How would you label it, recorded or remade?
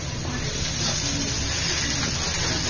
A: recorded